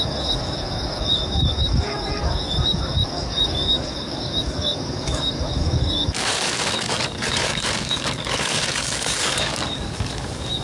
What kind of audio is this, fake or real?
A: fake